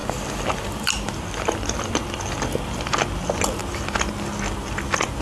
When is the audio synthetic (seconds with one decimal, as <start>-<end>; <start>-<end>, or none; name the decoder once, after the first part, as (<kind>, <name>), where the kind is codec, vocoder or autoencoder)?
none